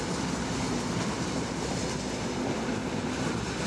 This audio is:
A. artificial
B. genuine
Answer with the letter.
B